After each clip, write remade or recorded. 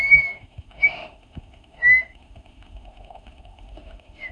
remade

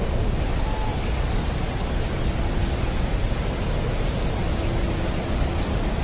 recorded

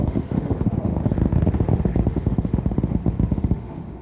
remade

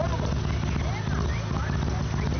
recorded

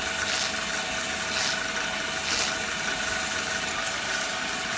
recorded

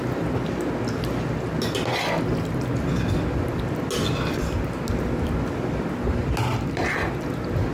recorded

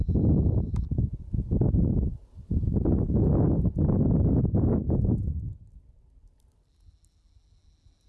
recorded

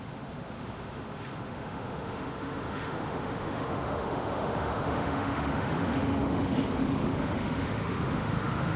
remade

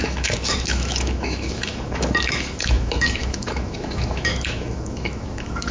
remade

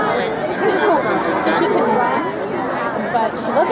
recorded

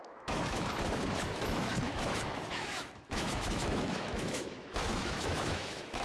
remade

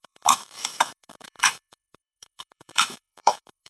remade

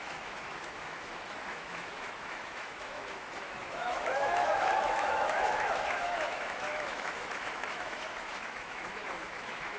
remade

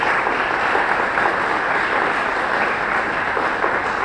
recorded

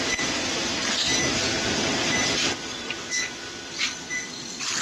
recorded